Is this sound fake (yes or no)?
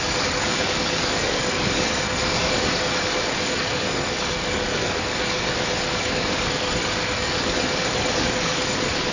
yes